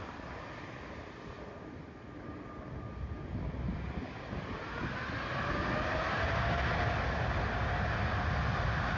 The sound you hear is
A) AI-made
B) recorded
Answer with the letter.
B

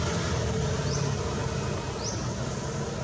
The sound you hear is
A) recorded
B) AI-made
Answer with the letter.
A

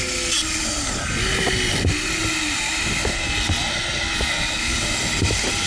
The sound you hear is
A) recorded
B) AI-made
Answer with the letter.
A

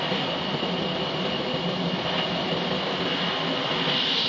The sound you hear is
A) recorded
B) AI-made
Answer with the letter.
A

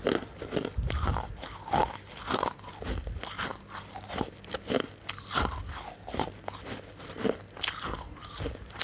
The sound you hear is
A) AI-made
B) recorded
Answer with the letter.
B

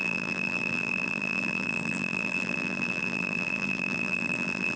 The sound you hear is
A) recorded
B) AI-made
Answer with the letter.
B